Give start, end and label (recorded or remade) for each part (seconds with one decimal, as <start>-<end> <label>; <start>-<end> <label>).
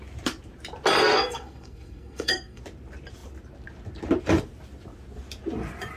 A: 0.0-1.0 recorded; 1.0-2.6 remade; 2.6-6.0 recorded